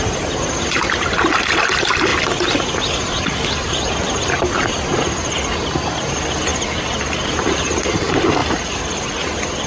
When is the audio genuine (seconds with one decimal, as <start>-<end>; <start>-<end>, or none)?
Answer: 0.0-9.7